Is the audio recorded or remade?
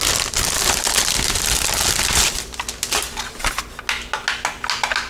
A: recorded